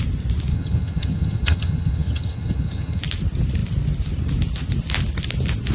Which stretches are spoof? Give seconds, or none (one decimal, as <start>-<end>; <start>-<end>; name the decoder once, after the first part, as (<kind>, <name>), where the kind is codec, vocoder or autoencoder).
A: 0.5-3.0 (vocoder, HiFi-GAN)